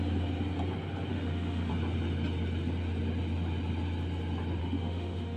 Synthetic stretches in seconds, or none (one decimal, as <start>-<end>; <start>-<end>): 1.1-1.7; 4.6-5.4